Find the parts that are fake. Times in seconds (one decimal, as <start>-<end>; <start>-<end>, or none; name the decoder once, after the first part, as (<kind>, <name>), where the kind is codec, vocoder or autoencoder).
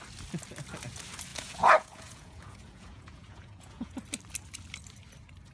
1.3-4.0 (vocoder, Vocos)